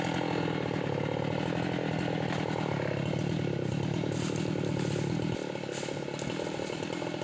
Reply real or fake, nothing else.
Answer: real